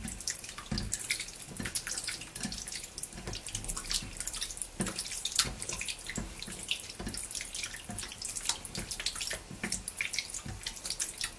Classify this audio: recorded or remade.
recorded